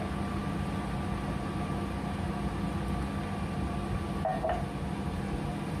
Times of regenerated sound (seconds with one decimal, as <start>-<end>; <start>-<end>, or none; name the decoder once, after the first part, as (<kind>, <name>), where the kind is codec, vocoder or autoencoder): none